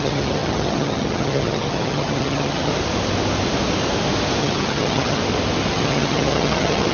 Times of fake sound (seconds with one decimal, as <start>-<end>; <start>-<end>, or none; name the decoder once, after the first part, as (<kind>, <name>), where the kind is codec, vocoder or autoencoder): 0.0-2.7 (vocoder, HiFi-GAN); 4.4-5.2; 5.7-6.9